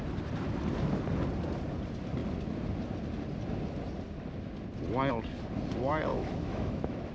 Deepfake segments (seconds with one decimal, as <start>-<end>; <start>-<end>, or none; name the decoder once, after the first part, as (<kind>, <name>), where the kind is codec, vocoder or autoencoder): 6.1-7.1 (autoencoder, DAC-VAE)